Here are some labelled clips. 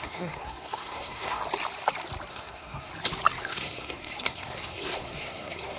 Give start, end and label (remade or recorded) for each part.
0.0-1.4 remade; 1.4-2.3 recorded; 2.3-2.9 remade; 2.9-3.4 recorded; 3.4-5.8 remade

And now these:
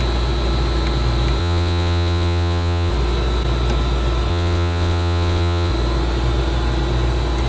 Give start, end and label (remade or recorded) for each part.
0.0-1.4 recorded; 1.4-2.9 remade; 2.9-4.3 recorded; 4.3-5.7 remade; 5.7-7.5 recorded

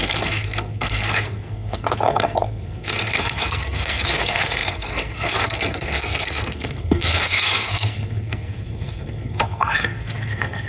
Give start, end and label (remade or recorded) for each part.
0.0-10.7 remade

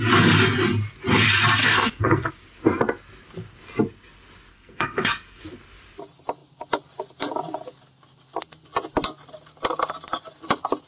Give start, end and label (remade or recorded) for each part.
0.0-1.6 recorded; 1.6-2.3 remade; 2.3-4.5 recorded; 4.5-5.4 remade; 5.4-10.9 recorded

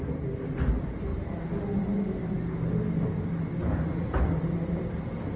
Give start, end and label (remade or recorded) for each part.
0.0-5.4 recorded

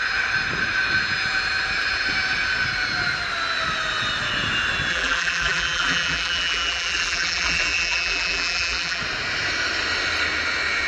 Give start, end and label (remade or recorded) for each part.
0.0-4.9 recorded; 4.9-9.0 remade; 9.0-10.9 recorded